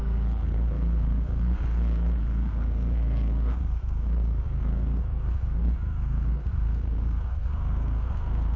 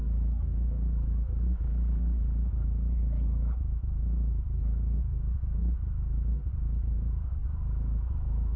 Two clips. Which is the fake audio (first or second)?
first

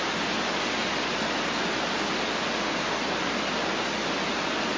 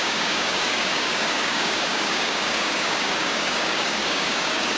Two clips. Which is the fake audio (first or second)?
second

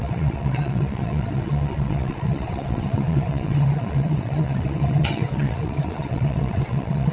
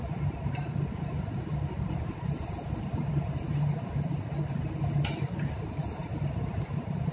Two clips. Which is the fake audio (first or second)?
first